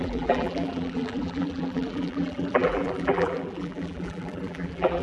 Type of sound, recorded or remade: remade